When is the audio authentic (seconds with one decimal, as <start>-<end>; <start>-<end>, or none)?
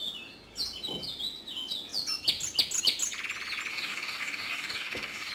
0.0-3.7